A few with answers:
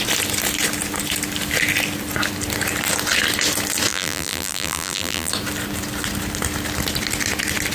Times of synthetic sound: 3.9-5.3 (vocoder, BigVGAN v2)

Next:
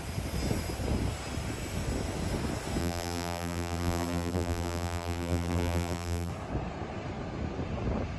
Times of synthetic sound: 2.8-6.3 (vocoder, BigVGAN v2)